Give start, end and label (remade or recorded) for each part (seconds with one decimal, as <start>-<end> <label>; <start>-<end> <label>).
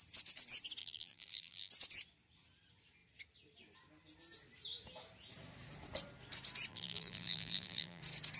0.0-0.8 recorded; 0.8-1.7 remade; 1.7-6.7 recorded; 6.7-8.0 remade; 8.0-8.4 recorded